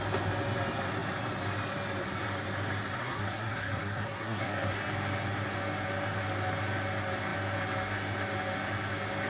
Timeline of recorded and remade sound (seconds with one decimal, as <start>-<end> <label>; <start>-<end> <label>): 0.0-3.0 recorded; 3.0-4.8 remade; 4.8-9.3 recorded